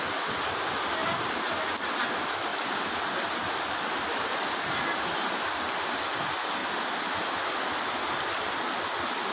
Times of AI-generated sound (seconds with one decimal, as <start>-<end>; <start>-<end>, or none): 2.5-5.7; 6.6-7.3